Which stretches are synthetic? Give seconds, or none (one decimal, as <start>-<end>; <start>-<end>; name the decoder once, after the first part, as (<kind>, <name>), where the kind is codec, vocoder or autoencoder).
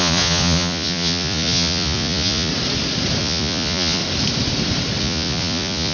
0.0-2.5 (vocoder, Vocos); 3.2-4.0; 5.0-5.9